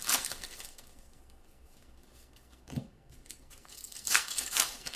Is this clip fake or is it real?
fake